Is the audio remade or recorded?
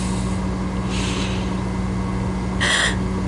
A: recorded